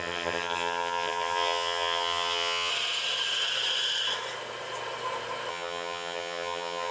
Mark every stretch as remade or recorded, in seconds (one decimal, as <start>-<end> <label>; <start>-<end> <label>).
0.0-2.7 remade; 2.7-5.5 recorded; 5.5-6.9 remade